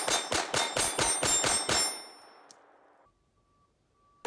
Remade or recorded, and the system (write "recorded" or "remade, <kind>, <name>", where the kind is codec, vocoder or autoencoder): recorded